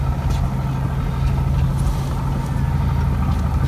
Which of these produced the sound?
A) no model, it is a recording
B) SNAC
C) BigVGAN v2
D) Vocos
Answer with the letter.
A